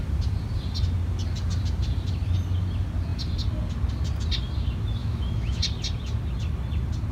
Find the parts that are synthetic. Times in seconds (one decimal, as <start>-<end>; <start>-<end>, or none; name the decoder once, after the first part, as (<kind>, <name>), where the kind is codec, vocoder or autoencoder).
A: 5.0-5.6 (autoencoder, DAC-VAE)